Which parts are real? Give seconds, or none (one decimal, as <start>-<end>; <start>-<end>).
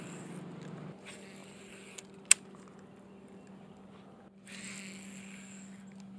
0.0-6.2